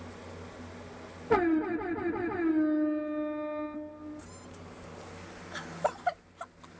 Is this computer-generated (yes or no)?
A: no